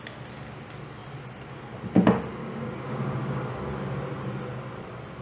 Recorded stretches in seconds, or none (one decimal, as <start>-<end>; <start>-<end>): 0.0-2.4; 3.7-5.2